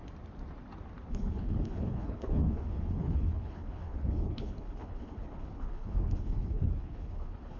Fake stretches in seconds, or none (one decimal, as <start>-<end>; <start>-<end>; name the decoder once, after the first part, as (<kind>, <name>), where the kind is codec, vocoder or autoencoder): 1.1-7.6 (codec, HILCodec)